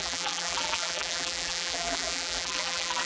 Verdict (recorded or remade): remade